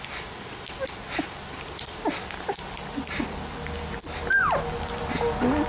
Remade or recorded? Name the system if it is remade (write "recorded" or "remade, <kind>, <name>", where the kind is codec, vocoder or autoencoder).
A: recorded